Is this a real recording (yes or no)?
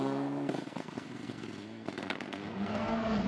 no